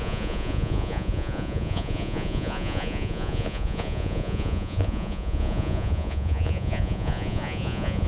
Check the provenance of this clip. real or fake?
fake